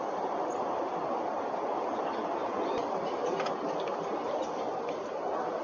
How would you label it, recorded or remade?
recorded